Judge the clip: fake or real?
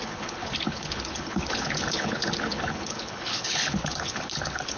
fake